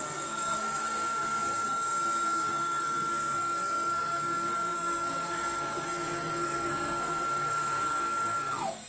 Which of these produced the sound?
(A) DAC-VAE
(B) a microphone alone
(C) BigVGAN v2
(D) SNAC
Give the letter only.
D